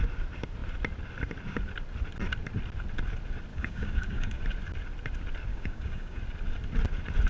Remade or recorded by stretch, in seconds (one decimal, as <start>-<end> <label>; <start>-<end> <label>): 0.0-3.5 recorded; 3.5-4.4 remade; 4.4-5.5 recorded; 5.5-6.2 remade; 6.2-7.3 recorded